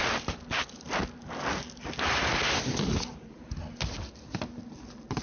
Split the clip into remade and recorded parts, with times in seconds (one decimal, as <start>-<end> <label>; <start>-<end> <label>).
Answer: 0.0-5.2 recorded

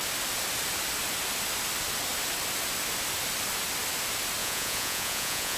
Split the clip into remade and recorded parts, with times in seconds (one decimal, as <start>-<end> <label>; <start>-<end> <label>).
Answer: 0.0-4.4 recorded; 4.4-5.6 remade

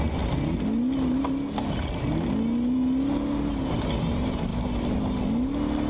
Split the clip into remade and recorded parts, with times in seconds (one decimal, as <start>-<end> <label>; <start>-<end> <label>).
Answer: 0.0-5.9 recorded